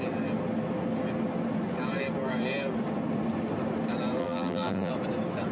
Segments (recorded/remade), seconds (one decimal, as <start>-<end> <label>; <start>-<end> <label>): 0.0-4.2 recorded; 4.2-4.9 remade; 4.9-5.5 recorded